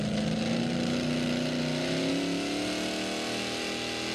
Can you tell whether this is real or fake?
real